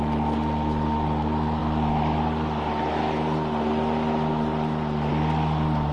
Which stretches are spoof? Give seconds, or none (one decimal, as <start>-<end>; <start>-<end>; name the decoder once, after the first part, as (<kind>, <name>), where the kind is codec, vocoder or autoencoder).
none